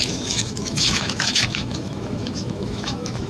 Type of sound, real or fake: fake